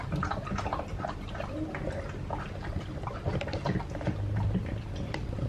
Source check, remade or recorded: recorded